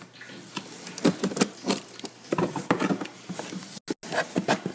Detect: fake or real real